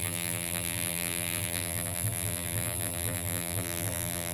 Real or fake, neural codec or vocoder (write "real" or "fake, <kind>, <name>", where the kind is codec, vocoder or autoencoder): fake, vocoder, BigVGAN v2